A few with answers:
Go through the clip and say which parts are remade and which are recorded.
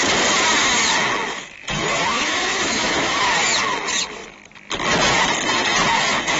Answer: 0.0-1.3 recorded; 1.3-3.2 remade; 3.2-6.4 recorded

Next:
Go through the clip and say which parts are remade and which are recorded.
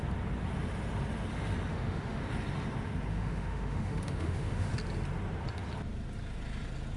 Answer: 0.0-1.7 recorded; 1.7-2.2 remade; 2.2-3.1 recorded; 3.1-4.7 remade; 4.7-7.0 recorded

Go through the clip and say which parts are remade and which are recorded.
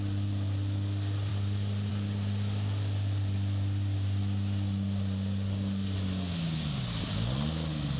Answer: 0.0-8.0 recorded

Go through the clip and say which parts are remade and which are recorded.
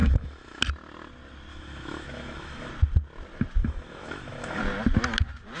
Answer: 0.0-0.6 remade; 0.6-1.5 recorded; 1.5-2.7 remade; 2.7-3.6 recorded; 3.6-4.6 remade; 4.6-5.6 recorded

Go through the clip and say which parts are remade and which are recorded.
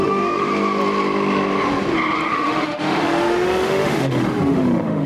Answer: 0.0-0.5 remade; 0.5-2.3 recorded; 2.3-5.1 remade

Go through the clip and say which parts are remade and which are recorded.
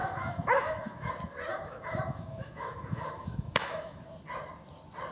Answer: 0.0-1.1 remade; 1.1-1.5 recorded; 1.5-4.0 remade; 4.0-5.1 recorded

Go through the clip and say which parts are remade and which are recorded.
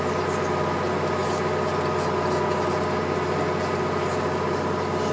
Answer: 0.0-5.1 recorded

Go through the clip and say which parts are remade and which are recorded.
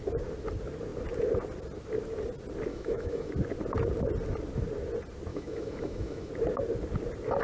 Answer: 0.0-2.7 recorded; 2.7-3.3 remade; 3.3-5.3 recorded; 5.3-6.3 remade; 6.3-7.4 recorded